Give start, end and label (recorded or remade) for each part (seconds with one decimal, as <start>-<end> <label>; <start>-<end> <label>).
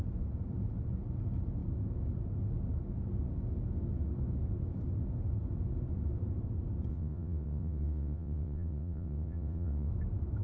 0.0-6.9 recorded; 6.9-9.9 remade; 9.9-10.4 recorded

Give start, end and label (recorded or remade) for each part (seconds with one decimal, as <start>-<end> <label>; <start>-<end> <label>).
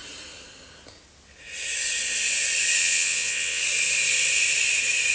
0.0-2.8 recorded; 2.8-3.6 remade; 3.6-5.1 recorded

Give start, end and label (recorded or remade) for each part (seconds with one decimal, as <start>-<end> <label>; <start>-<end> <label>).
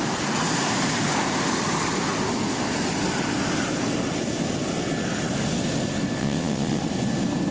0.0-6.2 recorded; 6.2-6.8 remade; 6.8-7.5 recorded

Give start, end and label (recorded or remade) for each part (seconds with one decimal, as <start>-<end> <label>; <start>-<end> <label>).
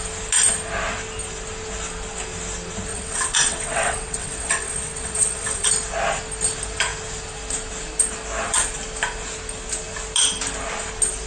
0.0-2.9 recorded; 2.9-5.7 remade; 5.7-11.3 recorded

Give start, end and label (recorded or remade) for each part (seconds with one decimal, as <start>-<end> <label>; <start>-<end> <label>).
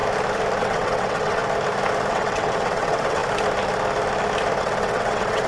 0.0-0.6 recorded; 0.6-1.4 remade; 1.4-2.1 recorded; 2.1-3.2 remade; 3.2-4.6 recorded; 4.6-5.5 remade